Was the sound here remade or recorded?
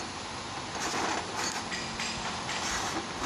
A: recorded